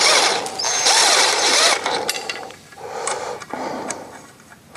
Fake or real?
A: fake